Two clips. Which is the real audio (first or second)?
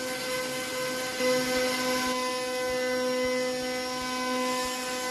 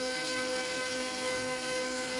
first